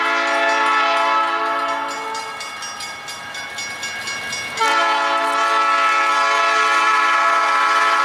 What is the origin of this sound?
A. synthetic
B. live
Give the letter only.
B